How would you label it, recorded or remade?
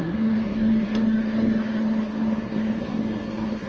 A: remade